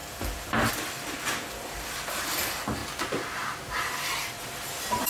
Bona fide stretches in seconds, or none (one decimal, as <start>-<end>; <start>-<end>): 2.8-3.8